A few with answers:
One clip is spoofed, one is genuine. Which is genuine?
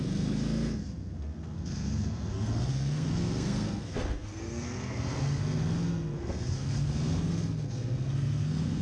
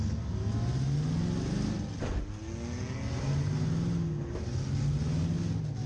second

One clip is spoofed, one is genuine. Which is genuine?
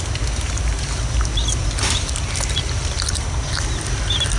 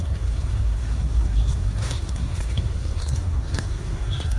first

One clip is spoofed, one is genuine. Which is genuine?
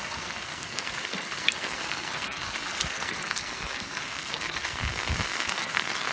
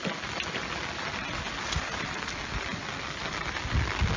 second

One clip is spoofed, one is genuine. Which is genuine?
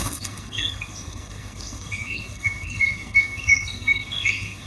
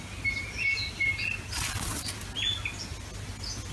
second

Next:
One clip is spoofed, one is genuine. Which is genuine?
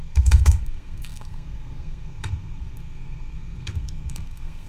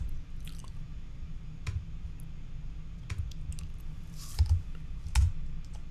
second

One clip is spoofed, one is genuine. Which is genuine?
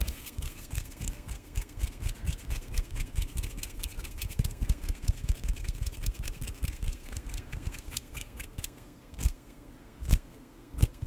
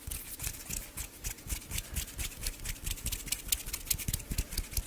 second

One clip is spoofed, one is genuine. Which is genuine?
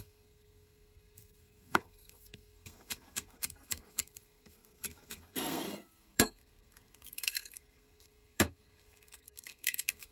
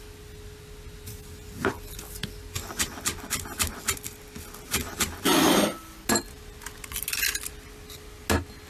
second